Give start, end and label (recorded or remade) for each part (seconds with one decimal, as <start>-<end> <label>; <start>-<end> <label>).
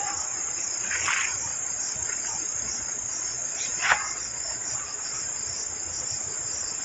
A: 0.0-1.5 recorded; 1.5-5.2 remade; 5.2-6.8 recorded